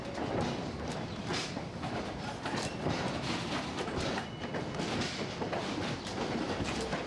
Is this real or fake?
fake